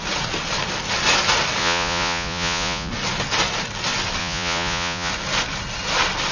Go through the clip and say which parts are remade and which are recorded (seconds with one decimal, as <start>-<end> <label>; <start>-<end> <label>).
0.0-1.6 recorded; 1.6-2.9 remade; 2.9-4.2 recorded; 4.2-5.1 remade; 5.1-6.3 recorded